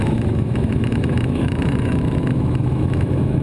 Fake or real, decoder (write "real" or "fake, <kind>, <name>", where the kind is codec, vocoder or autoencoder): fake, autoencoder, DAC-VAE